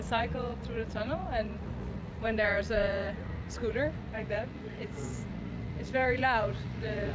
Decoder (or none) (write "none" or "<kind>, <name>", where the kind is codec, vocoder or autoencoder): vocoder, Vocos